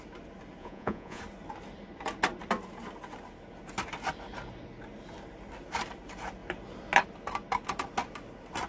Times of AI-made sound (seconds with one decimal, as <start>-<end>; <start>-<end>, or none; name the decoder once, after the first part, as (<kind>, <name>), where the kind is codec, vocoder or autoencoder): 0.6-1.2 (vocoder, Vocos)